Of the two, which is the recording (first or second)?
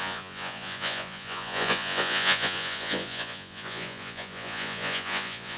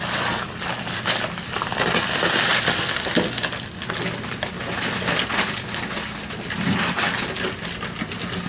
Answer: second